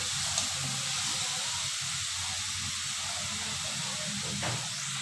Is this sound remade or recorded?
recorded